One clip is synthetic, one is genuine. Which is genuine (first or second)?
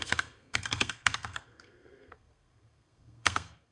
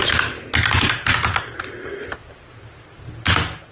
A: second